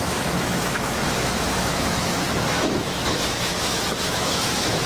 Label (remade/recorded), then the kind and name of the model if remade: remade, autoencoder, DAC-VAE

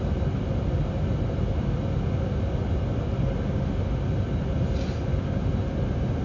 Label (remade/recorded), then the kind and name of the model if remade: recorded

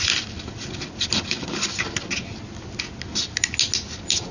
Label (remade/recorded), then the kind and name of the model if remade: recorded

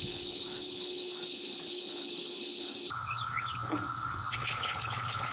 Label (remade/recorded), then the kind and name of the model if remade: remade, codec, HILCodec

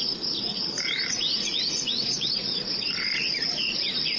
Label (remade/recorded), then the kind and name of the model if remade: remade, vocoder, Vocos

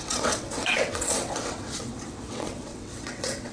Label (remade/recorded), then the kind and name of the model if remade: remade, vocoder, WaveNeXt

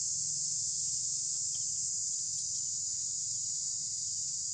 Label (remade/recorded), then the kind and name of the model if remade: recorded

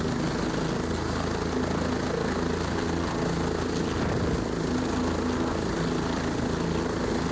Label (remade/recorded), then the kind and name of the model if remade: recorded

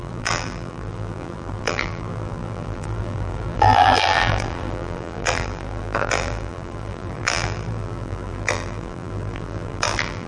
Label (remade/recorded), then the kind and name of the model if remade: remade, vocoder, BigVGAN v2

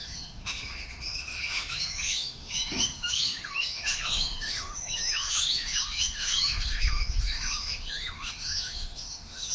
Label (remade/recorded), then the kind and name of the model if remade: remade, autoencoder, DAC-VAE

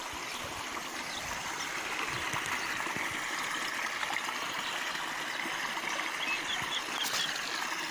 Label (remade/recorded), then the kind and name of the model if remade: recorded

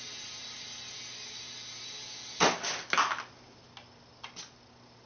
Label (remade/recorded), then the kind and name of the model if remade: recorded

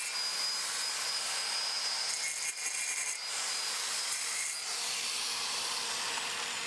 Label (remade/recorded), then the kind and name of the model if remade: recorded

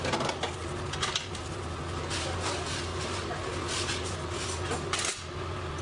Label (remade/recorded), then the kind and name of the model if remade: recorded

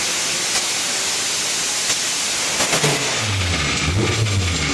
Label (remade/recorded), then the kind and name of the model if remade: recorded